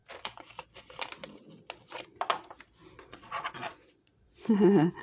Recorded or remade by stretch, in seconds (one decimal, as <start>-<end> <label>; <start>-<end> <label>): 0.0-3.0 recorded; 3.0-5.0 remade